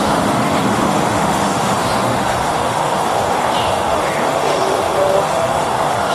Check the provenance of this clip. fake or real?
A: fake